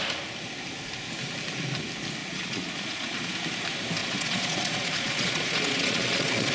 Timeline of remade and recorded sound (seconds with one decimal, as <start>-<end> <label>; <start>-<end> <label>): 0.0-2.2 recorded; 2.2-3.3 remade; 3.3-4.0 recorded; 4.0-6.5 remade